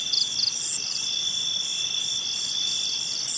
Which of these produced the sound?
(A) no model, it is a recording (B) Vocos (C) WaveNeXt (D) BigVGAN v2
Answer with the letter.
A